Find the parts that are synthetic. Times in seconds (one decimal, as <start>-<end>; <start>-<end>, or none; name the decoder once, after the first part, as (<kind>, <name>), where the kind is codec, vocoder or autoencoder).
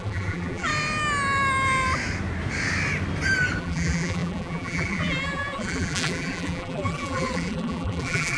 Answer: 0.0-0.7 (vocoder, BigVGAN v2); 3.6-8.4